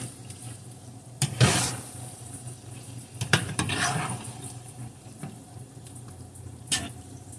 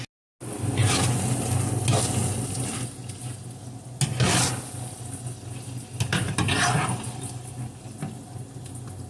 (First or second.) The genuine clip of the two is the second